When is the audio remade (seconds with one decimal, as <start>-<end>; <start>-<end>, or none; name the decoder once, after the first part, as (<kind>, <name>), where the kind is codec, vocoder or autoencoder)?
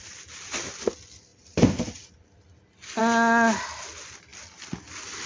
none